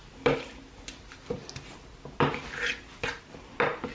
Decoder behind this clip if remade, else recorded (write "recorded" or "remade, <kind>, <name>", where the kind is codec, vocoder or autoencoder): recorded